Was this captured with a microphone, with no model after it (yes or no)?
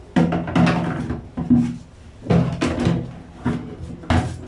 yes